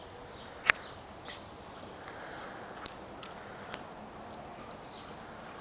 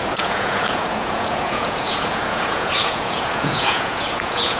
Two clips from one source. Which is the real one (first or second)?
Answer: first